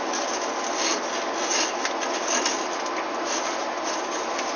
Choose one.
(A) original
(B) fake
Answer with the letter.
A